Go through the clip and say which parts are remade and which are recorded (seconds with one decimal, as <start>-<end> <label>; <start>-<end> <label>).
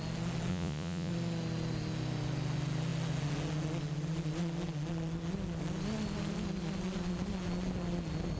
0.0-0.5 recorded; 0.5-1.1 remade; 1.1-8.4 recorded